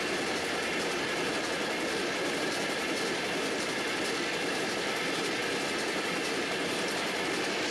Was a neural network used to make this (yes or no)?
no